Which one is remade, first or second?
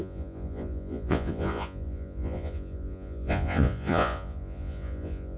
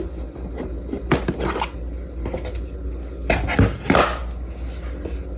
first